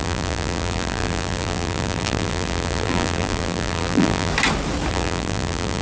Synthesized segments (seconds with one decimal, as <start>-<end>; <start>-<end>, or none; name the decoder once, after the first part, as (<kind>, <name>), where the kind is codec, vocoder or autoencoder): 0.0-4.3 (vocoder, BigVGAN v2); 4.9-5.8